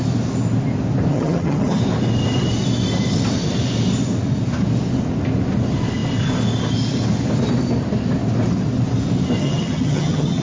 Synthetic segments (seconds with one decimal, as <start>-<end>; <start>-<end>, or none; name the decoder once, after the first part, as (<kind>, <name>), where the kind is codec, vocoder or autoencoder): 1.1-1.8 (vocoder, HiFi-GAN); 9.4-10.4